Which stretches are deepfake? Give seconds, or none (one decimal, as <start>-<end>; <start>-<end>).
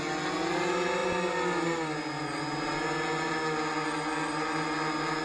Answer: none